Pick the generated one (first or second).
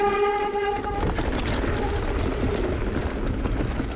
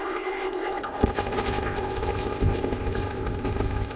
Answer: second